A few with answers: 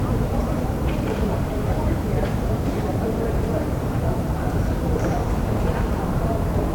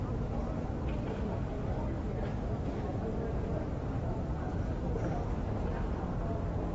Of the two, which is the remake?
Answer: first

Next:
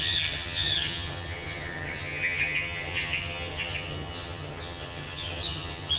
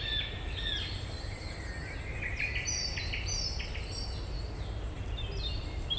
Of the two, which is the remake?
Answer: first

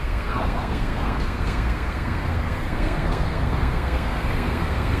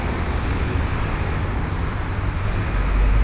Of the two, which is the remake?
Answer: first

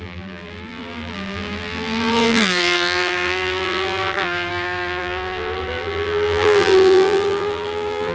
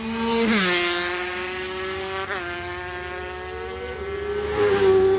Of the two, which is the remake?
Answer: first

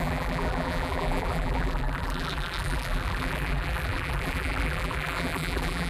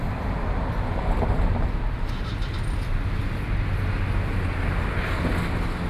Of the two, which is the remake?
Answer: first